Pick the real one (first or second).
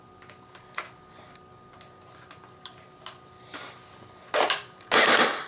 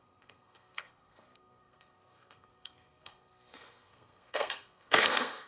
first